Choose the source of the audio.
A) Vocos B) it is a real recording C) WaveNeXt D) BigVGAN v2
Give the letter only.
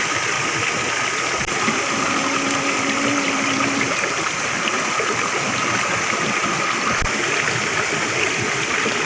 B